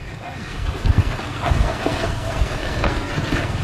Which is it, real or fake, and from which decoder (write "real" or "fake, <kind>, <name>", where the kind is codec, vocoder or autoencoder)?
fake, codec, SNAC